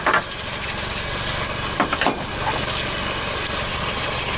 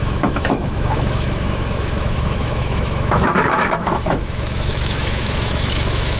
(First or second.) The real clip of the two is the first